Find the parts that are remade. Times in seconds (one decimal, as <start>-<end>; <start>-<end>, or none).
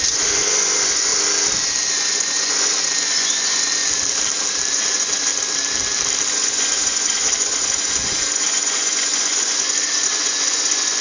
0.0-1.1; 1.9-3.8; 4.7-5.3; 6.3-11.0